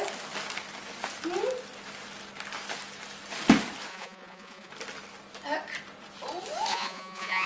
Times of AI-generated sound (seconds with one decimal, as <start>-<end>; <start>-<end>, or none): 3.9-4.7; 6.7-7.5